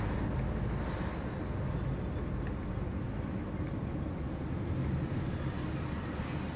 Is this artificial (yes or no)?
no